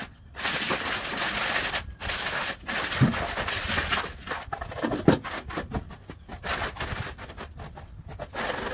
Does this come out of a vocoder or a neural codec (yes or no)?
no